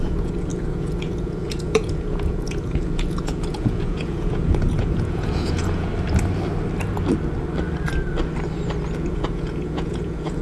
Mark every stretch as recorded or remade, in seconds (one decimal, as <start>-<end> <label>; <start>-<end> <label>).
0.0-5.9 remade; 5.9-8.9 recorded; 8.9-10.4 remade

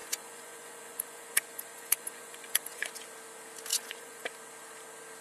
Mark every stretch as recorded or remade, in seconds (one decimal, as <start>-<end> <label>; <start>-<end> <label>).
0.0-2.9 remade; 2.9-3.7 recorded; 3.7-4.2 remade; 4.2-5.2 recorded

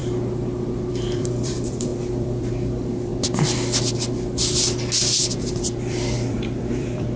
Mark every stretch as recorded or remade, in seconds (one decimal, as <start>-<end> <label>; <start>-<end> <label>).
0.0-0.9 recorded; 0.9-3.1 remade; 3.1-5.5 recorded; 5.5-7.2 remade

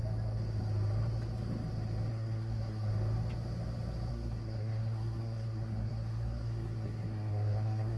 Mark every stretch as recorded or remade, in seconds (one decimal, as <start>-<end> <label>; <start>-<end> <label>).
0.0-2.1 recorded; 2.1-2.9 remade; 2.9-4.1 recorded; 4.1-8.0 remade

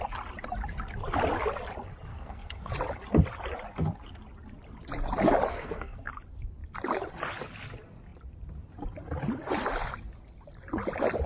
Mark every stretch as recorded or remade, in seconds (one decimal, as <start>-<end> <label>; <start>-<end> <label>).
0.0-2.1 recorded; 2.1-2.7 remade; 2.7-5.5 recorded; 5.5-6.1 remade; 6.1-11.3 recorded

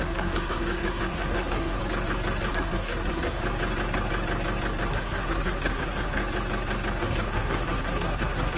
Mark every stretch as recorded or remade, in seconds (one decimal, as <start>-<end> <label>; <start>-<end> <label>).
0.0-1.8 remade; 1.8-2.5 recorded; 2.5-3.4 remade; 3.4-4.9 recorded; 4.9-6.2 remade; 6.2-7.0 recorded; 7.0-8.6 remade

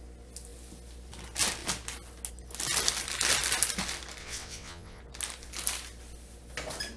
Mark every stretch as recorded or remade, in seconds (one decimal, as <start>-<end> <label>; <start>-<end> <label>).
0.0-4.2 recorded; 4.2-5.0 remade; 5.0-7.0 recorded